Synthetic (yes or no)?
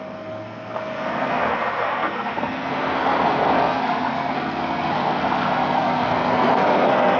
yes